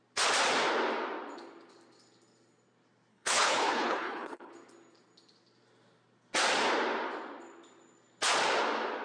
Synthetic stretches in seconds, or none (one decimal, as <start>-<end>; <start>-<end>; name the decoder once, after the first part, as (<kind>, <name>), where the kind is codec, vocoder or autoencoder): 3.1-4.5 (codec, HILCodec)